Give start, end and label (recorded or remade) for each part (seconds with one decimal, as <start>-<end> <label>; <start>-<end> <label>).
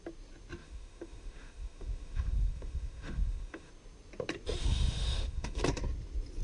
0.0-0.6 recorded; 0.6-3.7 remade; 3.7-4.6 recorded; 4.6-5.6 remade; 5.6-6.4 recorded